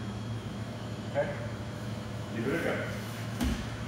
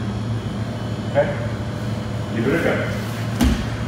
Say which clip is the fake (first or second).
first